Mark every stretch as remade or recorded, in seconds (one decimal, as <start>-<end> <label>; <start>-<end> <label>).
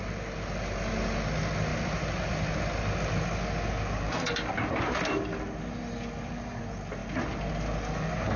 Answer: 0.0-8.4 recorded